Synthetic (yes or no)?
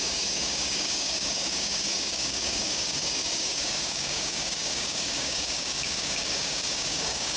yes